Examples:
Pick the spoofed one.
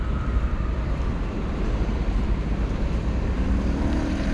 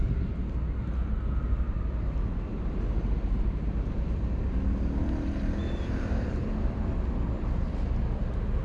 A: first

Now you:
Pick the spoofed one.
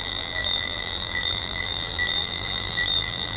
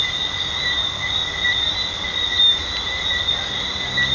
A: first